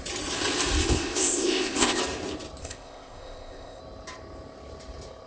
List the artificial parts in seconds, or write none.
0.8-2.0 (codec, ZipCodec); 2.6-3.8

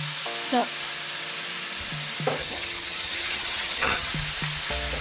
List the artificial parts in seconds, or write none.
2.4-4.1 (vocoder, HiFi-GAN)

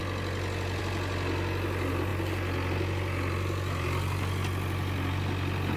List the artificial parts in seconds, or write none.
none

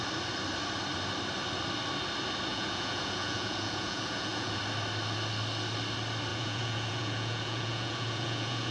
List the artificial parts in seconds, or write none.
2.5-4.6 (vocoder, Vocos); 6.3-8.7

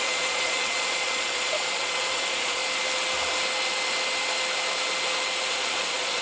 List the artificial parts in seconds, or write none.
0.0-2.6 (vocoder, Vocos); 5.5-6.2